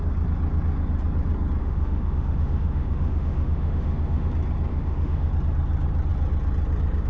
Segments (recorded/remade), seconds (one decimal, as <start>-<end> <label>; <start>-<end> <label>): 0.0-1.6 recorded; 1.6-4.3 remade; 4.3-4.7 recorded; 4.7-5.3 remade; 5.3-7.1 recorded